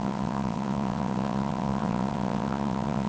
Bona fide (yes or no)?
no